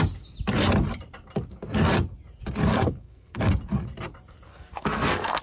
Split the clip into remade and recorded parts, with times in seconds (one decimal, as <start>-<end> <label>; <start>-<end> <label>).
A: 0.0-2.7 recorded; 2.7-3.4 remade; 3.4-4.5 recorded; 4.5-5.4 remade